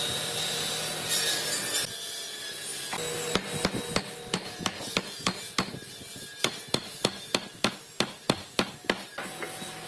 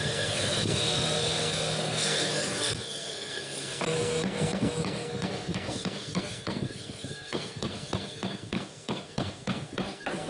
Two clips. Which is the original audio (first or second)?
first